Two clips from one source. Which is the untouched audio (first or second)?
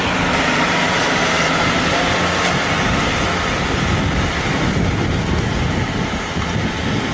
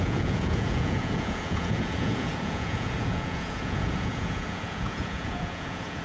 first